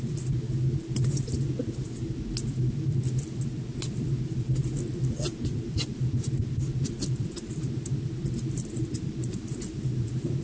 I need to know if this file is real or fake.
real